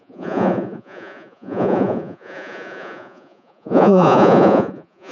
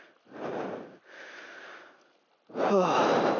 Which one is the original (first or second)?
second